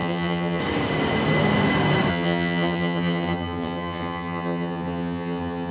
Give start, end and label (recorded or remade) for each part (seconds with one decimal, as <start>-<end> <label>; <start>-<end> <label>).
0.0-0.6 remade; 0.6-2.1 recorded; 2.1-5.7 remade